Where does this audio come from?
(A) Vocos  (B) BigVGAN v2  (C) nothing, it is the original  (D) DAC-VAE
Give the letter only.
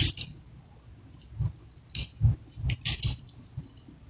C